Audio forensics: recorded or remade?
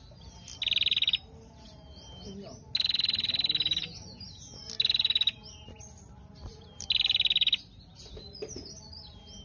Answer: recorded